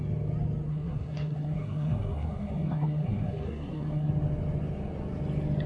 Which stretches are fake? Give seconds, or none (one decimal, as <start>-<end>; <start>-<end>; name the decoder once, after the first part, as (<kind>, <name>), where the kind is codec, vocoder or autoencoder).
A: 0.7-4.1 (codec, SNAC)